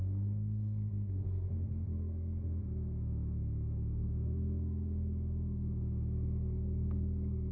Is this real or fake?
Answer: fake